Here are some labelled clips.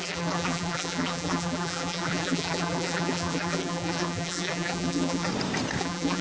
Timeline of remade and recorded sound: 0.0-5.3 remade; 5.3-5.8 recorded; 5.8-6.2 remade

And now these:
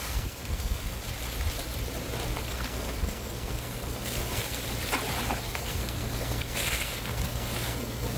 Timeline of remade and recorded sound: 0.0-1.0 remade; 1.0-2.4 recorded; 2.4-4.6 remade; 4.6-5.4 recorded; 5.4-8.2 remade

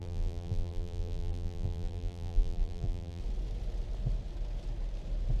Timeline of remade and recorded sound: 0.0-3.2 remade; 3.2-5.4 recorded

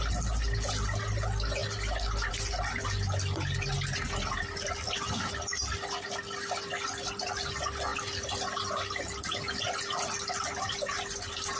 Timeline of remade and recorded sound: 0.0-11.6 recorded